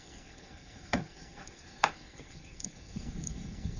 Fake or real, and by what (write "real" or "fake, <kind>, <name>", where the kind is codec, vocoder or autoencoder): fake, codec, SNAC